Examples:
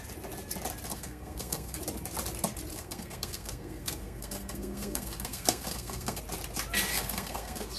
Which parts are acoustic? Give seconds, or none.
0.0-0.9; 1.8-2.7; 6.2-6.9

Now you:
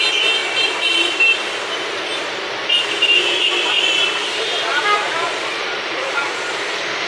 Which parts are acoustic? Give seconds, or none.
0.0-0.4; 2.2-2.7; 3.5-4.7; 6.1-7.1

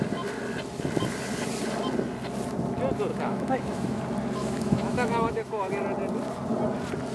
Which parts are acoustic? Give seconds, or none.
0.0-3.1; 4.0-4.4; 5.7-7.1

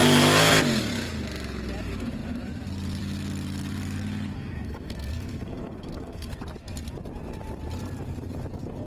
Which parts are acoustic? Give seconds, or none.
0.0-4.3; 6.4-8.9

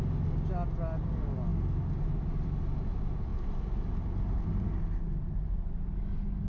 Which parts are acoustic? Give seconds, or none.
0.0-6.5